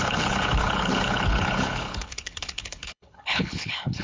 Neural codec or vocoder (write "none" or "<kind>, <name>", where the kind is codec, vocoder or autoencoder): codec, HILCodec